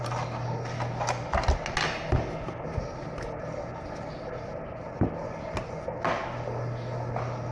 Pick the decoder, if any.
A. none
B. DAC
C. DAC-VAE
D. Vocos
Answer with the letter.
A